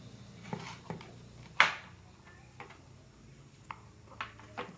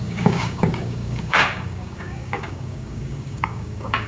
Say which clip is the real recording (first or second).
first